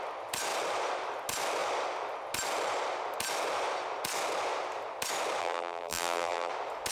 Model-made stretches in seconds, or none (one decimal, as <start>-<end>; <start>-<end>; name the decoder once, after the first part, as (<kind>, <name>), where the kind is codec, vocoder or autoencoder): 5.4-6.5 (vocoder, BigVGAN v2)